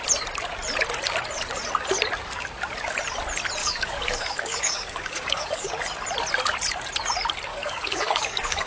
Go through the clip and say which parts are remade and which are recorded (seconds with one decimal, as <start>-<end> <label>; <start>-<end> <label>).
0.0-3.6 recorded; 3.6-5.7 remade; 5.7-7.5 recorded; 7.5-8.7 remade